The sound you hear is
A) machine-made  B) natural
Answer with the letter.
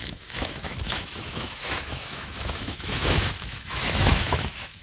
A